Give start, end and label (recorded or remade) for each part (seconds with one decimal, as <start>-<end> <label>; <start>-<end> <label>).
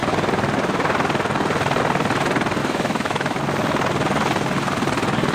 0.0-2.6 recorded; 2.6-3.4 remade; 3.4-5.3 recorded